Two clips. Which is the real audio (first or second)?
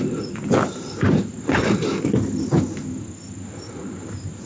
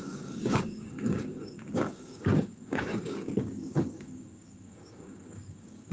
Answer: first